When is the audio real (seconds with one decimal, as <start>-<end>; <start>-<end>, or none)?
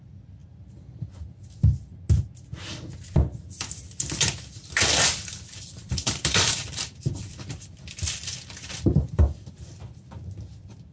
0.4-5.3